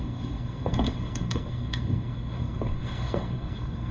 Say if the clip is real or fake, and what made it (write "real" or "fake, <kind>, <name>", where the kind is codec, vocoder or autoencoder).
fake, codec, SNAC